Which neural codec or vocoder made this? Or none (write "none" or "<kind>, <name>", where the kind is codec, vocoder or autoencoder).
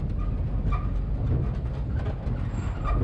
none